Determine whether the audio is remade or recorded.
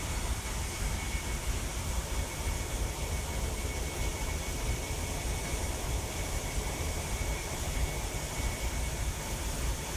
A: recorded